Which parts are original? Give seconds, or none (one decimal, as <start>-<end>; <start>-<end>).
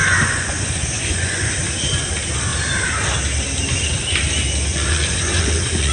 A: 1.5-4.7